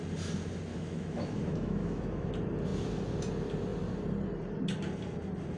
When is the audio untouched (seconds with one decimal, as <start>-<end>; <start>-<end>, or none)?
0.0-0.7; 2.3-5.6